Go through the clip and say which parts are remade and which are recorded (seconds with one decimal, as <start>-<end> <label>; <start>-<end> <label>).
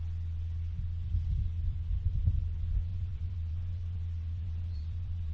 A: 0.0-2.9 recorded; 2.9-5.3 remade